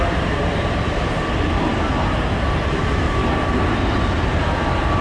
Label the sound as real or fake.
real